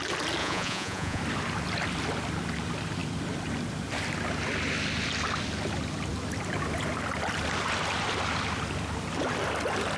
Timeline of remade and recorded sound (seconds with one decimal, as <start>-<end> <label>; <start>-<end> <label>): 0.0-0.4 recorded; 0.4-1.2 remade; 1.2-10.0 recorded